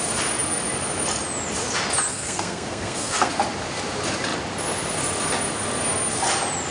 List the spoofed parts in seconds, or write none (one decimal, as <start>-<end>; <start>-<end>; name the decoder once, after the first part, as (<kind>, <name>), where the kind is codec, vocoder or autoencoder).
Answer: 2.1-3.3 (codec, SNAC)